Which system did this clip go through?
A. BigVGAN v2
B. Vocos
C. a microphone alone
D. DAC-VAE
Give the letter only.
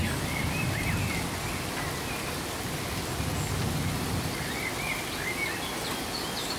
C